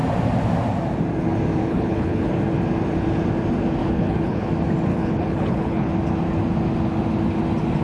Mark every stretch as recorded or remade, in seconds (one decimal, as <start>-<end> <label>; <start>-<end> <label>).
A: 0.0-1.6 recorded; 1.6-2.3 remade; 2.3-3.8 recorded; 3.8-4.5 remade; 4.5-4.9 recorded; 4.9-5.9 remade; 5.9-7.8 recorded